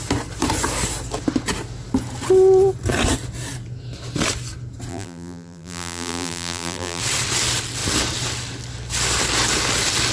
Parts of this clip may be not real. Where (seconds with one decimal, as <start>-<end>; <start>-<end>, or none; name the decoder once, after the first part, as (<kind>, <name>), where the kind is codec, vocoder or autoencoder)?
4.9-7.0 (vocoder, BigVGAN v2)

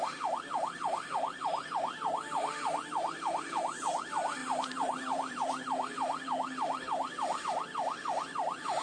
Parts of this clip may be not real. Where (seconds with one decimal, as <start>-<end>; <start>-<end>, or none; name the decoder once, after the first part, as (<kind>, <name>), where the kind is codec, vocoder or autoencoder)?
4.4-7.4 (vocoder, BigVGAN v2)

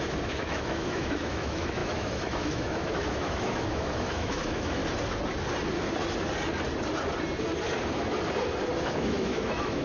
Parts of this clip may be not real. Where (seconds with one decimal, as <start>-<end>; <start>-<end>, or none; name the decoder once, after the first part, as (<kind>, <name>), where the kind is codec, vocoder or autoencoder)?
0.0-4.8 (autoencoder, DAC-VAE); 8.8-9.8

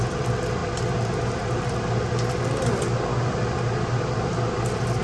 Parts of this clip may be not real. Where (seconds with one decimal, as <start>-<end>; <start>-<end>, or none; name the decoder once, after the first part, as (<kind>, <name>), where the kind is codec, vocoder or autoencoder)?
none

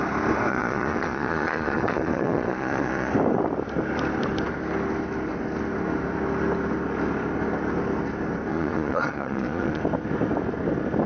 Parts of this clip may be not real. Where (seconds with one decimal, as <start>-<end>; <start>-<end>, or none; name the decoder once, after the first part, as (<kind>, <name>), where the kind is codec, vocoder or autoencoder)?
0.5-3.1 (vocoder, Vocos); 8.5-9.8

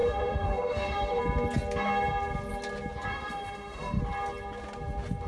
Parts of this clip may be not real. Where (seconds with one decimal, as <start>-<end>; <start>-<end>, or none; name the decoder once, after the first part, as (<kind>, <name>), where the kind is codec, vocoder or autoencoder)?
0.0-1.2 (autoencoder, DAC-VAE); 3.1-4.0